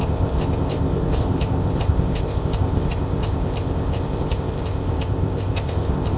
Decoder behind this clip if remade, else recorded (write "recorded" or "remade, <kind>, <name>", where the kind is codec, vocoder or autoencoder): remade, codec, ZipCodec